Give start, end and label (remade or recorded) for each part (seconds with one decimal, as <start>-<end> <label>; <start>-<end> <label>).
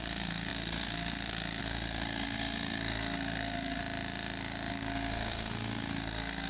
0.0-3.8 remade; 3.8-4.7 recorded; 4.7-6.5 remade